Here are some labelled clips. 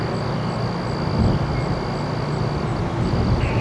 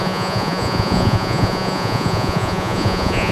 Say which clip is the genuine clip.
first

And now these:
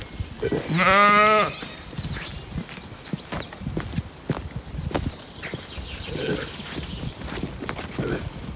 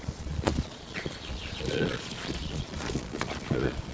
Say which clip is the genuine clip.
first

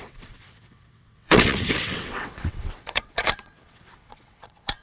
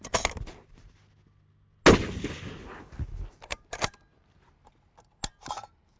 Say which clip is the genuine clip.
second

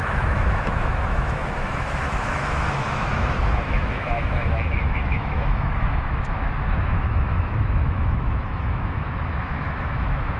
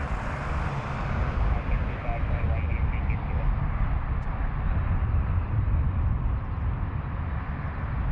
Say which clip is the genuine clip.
second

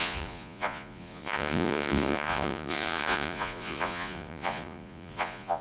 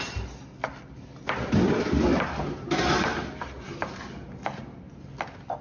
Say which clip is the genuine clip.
second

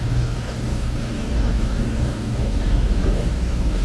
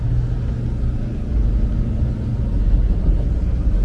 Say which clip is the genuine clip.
second